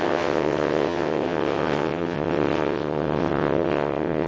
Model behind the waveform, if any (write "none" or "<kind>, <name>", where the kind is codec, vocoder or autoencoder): vocoder, WaveNeXt